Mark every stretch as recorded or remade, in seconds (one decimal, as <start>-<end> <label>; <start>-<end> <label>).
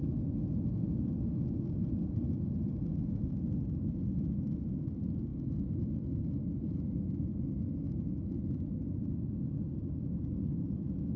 0.0-11.2 recorded